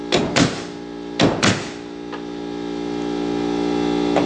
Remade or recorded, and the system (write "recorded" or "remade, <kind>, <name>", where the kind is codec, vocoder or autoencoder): recorded